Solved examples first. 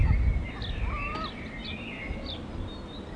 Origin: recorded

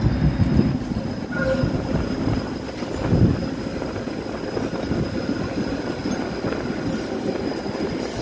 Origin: recorded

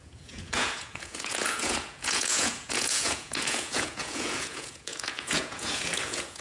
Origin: remade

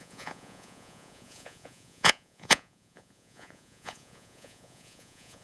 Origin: remade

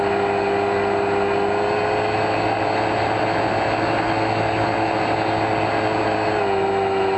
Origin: recorded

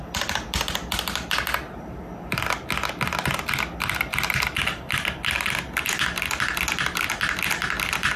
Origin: recorded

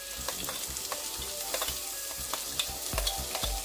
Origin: recorded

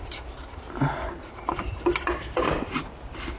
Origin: recorded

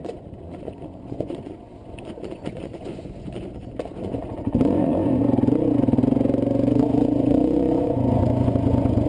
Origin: remade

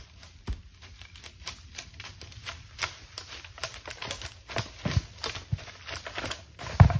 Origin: recorded